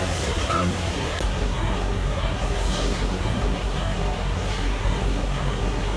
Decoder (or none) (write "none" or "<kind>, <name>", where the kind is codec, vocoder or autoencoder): codec, SNAC